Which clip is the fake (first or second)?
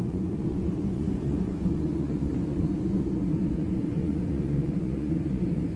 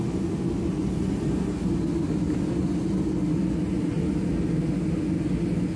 first